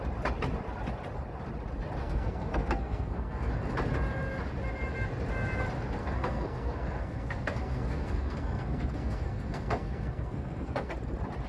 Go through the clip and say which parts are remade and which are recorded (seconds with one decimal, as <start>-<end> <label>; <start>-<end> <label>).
0.0-2.0 recorded; 2.0-3.5 remade; 3.5-6.0 recorded; 6.0-10.9 remade; 10.9-11.5 recorded